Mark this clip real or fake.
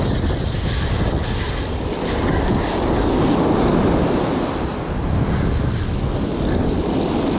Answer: real